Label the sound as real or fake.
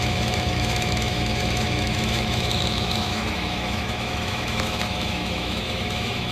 fake